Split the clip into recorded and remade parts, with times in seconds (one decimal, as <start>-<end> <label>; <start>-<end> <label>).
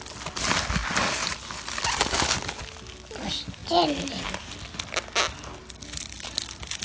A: 0.0-6.8 recorded